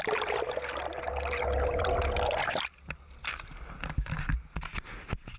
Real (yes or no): yes